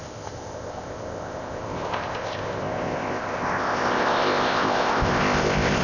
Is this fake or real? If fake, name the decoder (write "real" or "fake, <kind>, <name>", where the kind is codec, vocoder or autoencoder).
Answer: fake, codec, ZipCodec